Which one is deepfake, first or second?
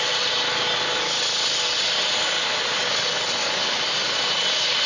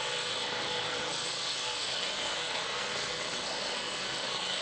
second